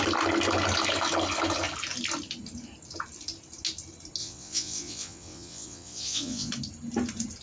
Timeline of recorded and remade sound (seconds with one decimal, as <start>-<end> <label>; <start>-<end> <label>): 0.0-4.2 recorded; 4.2-6.5 remade; 6.5-7.4 recorded